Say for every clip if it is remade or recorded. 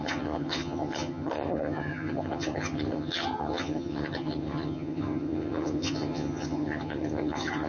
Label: remade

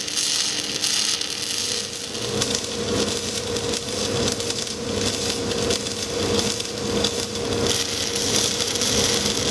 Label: recorded